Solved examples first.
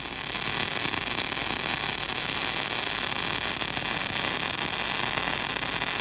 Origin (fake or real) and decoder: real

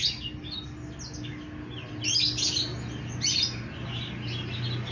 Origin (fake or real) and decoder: real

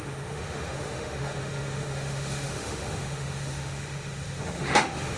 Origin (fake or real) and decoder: fake, autoencoder, DAC-VAE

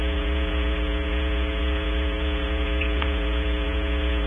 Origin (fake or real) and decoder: fake, vocoder, Vocos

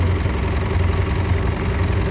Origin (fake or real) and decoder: real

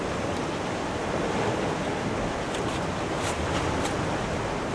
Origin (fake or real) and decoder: real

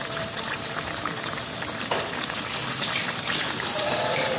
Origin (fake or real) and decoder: fake, vocoder, BigVGAN v2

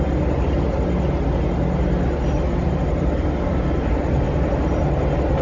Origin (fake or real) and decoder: real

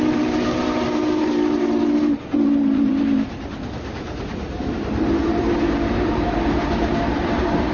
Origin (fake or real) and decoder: fake, vocoder, BigVGAN v2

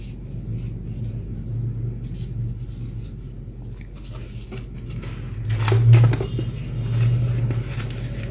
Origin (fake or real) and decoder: real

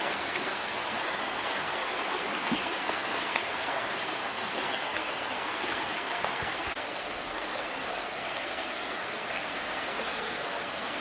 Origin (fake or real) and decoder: fake, codec, SNAC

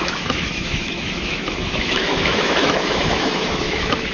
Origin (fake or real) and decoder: fake, autoencoder, DAC-VAE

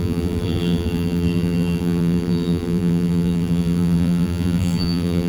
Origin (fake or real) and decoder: fake, vocoder, BigVGAN v2